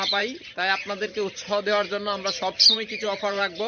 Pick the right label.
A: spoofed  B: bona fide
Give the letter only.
A